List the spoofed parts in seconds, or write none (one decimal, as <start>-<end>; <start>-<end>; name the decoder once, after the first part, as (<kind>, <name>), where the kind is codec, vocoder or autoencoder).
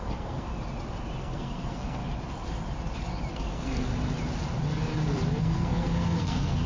0.0-0.5 (codec, SNAC); 1.2-2.0; 3.3-3.9; 5.4-6.7